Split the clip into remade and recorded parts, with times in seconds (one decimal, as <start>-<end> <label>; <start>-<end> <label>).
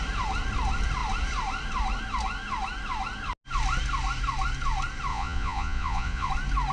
0.0-5.1 recorded; 5.1-6.3 remade; 6.3-6.7 recorded